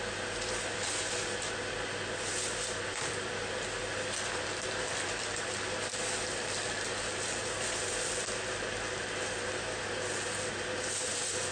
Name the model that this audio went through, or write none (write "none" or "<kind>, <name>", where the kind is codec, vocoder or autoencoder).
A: none